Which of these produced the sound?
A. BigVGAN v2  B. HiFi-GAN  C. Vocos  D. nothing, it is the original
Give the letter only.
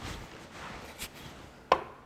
D